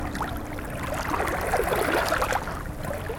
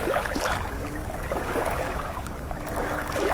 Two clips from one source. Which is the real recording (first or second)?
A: first